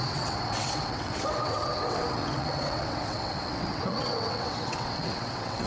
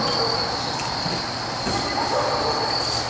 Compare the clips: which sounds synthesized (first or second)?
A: first